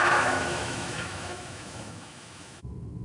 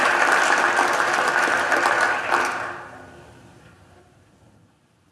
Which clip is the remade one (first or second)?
first